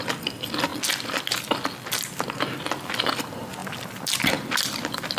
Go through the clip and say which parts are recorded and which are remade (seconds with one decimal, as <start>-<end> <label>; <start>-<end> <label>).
0.0-5.2 recorded